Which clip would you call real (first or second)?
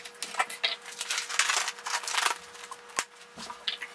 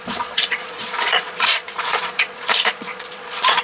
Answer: first